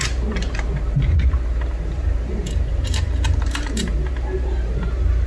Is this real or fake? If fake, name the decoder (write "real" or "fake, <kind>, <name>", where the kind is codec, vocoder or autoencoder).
fake, vocoder, BigVGAN v2